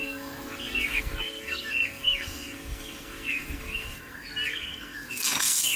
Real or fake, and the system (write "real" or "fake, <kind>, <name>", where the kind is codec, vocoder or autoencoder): fake, codec, SNAC